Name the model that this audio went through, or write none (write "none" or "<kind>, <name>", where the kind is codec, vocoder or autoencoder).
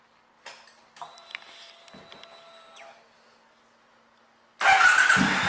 none